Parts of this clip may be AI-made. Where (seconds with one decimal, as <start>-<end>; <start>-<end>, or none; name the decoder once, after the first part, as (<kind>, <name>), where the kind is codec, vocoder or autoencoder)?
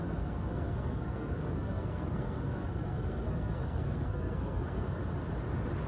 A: 0.0-5.0 (codec, SNAC)